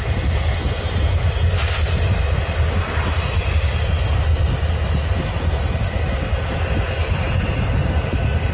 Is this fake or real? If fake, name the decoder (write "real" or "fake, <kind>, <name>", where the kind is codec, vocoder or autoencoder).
real